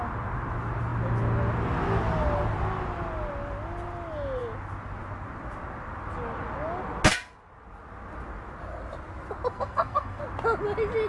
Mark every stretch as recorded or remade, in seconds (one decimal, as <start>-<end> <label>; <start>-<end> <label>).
0.0-9.5 recorded; 9.5-10.2 remade; 10.2-11.1 recorded